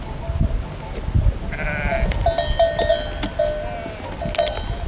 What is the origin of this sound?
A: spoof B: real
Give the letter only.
B